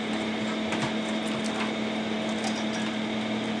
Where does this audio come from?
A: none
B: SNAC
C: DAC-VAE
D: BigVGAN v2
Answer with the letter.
D